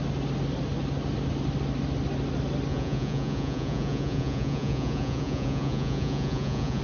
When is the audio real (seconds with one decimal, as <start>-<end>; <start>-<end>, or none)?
0.0-2.7